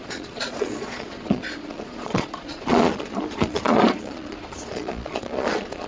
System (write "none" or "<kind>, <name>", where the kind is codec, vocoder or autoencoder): vocoder, Vocos